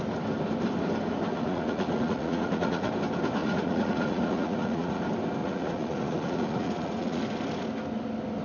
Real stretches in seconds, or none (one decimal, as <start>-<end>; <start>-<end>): 0.0-1.3; 2.9-3.4; 5.0-5.4; 7.2-8.4